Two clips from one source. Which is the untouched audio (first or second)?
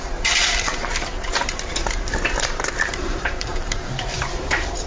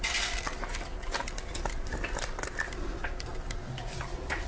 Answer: second